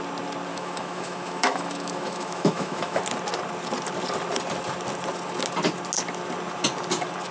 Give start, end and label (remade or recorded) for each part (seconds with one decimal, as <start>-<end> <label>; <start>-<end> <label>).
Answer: 0.0-0.5 recorded; 0.5-3.0 remade; 3.0-7.3 recorded